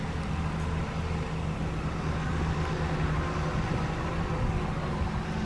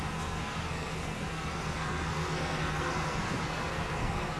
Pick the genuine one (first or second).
first